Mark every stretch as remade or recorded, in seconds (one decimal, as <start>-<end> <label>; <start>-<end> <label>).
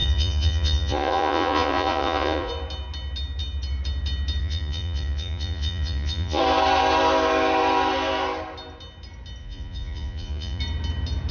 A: 0.0-2.5 remade; 2.5-4.4 recorded; 4.4-6.4 remade; 6.4-9.4 recorded; 9.4-10.6 remade; 10.6-11.3 recorded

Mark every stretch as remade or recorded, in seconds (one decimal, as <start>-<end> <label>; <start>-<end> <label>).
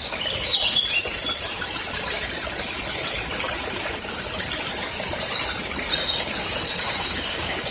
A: 0.0-5.9 recorded; 5.9-7.7 remade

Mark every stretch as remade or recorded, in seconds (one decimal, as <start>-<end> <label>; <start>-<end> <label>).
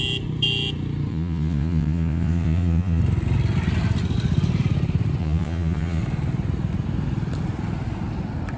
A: 0.0-1.1 recorded; 1.1-3.0 remade; 3.0-5.2 recorded; 5.2-6.0 remade; 6.0-8.6 recorded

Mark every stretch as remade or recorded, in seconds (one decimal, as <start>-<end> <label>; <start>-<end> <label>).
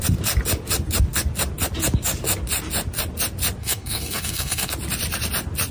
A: 0.0-3.6 recorded; 3.6-4.7 remade; 4.7-5.7 recorded